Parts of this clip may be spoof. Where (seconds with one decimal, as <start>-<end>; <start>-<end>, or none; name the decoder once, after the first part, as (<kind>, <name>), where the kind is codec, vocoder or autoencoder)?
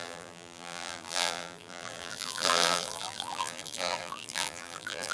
0.0-5.1 (vocoder, BigVGAN v2)